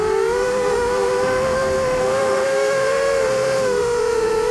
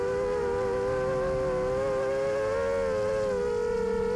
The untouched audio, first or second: second